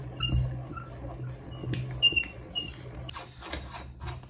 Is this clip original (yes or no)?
yes